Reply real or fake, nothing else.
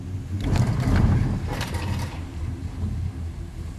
fake